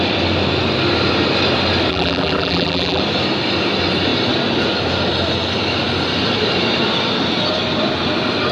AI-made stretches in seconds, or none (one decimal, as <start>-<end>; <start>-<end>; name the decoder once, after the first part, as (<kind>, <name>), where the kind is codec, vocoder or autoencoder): 1.9-3.0 (vocoder, BigVGAN v2)